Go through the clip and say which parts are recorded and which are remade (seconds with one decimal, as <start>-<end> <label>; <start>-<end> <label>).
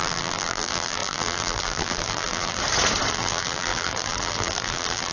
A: 0.0-2.6 remade; 2.6-3.1 recorded; 3.1-5.1 remade